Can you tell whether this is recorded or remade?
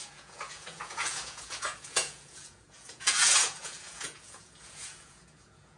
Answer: remade